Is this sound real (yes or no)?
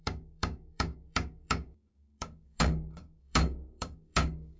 no